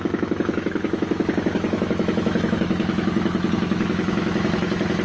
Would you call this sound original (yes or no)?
no